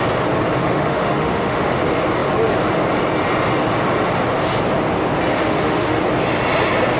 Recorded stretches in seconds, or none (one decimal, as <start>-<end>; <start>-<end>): 0.0-0.6; 1.8-5.3; 6.0-7.0